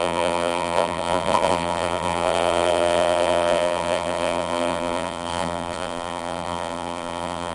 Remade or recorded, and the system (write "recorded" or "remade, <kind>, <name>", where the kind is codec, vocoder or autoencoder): remade, vocoder, BigVGAN v2